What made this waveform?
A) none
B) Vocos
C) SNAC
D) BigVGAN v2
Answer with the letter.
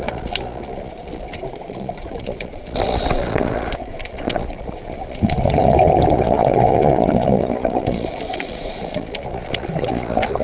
B